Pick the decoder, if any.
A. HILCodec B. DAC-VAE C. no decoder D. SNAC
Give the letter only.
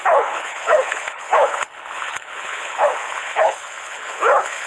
A